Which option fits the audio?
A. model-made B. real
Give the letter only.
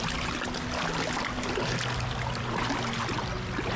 B